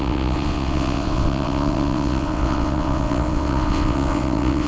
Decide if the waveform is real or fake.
fake